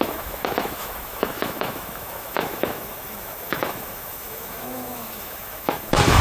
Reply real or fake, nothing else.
fake